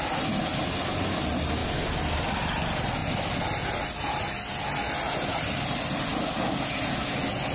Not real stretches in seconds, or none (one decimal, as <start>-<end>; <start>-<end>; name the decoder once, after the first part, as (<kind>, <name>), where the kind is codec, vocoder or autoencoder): none

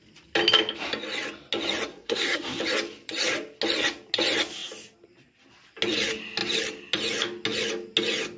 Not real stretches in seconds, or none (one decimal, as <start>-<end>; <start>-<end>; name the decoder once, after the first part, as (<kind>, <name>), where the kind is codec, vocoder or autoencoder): 1.9-2.6 (codec, SNAC)

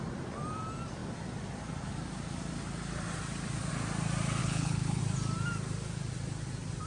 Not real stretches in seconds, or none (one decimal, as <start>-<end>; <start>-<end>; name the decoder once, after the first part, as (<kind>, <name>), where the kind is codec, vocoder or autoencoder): 4.4-5.0 (codec, HILCodec)

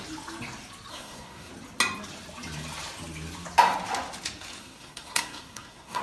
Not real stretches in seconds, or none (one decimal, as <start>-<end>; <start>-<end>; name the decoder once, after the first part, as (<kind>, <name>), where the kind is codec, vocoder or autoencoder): 0.9-1.5 (codec, SNAC); 4.6-6.0

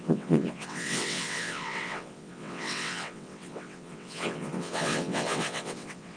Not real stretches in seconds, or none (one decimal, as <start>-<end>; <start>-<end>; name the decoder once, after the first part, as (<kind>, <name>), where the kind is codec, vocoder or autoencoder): 0.0-6.2 (vocoder, WaveNeXt)